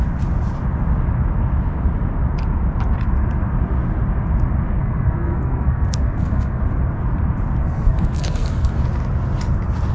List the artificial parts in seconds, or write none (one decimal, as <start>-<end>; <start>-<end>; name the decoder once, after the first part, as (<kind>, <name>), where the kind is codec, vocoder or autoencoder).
4.8-6.6 (codec, SNAC); 7.6-8.8